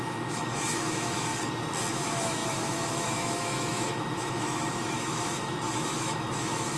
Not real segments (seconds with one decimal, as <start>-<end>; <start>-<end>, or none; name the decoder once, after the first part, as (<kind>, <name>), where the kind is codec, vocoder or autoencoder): 0.0-1.3 (autoencoder, DAC-VAE); 1.9-6.8